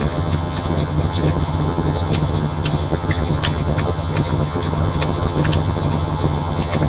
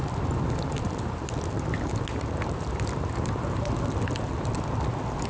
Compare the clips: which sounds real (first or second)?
second